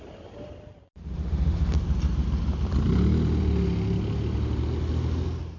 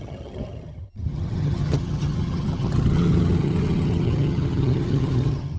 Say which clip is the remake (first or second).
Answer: second